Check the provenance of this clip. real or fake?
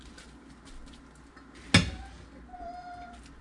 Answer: real